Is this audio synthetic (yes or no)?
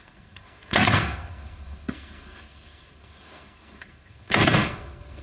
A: yes